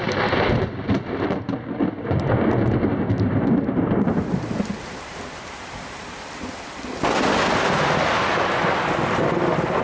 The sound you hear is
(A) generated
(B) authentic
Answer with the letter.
B